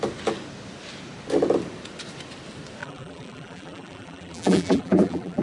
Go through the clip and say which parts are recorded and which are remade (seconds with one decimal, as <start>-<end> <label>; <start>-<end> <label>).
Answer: 0.0-2.8 recorded; 2.8-5.4 remade